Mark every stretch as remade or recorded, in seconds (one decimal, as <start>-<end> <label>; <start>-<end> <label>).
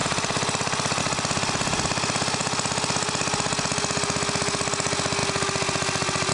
0.0-6.3 recorded